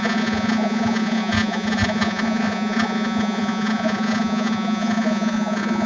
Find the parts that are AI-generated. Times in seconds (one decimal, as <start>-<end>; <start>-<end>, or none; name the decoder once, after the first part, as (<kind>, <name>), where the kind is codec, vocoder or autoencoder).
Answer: 0.0-5.9 (vocoder, Vocos)